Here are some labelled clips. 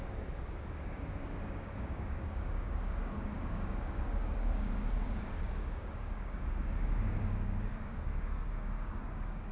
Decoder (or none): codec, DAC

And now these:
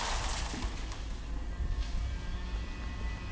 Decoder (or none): none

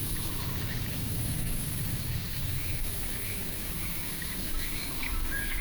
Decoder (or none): codec, DAC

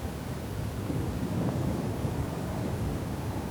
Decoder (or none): codec, DAC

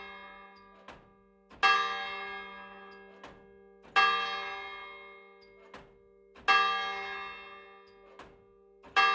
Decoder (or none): none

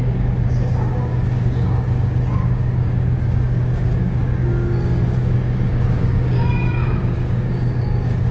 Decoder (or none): codec, DAC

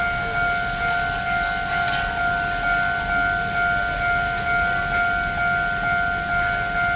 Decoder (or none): none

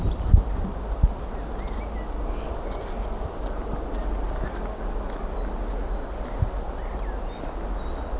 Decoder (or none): none